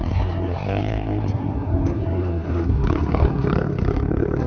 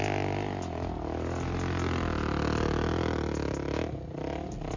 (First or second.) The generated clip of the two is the first